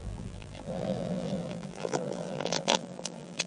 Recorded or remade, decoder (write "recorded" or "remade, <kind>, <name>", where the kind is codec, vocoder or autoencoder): remade, vocoder, BigVGAN v2